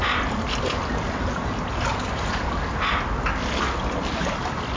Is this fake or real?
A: real